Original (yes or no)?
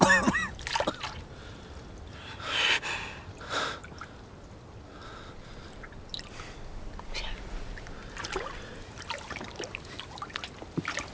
yes